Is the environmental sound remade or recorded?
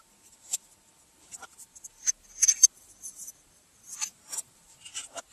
recorded